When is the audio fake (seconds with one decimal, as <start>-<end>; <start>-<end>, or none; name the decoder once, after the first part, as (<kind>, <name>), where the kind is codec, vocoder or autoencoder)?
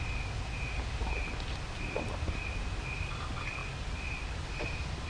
none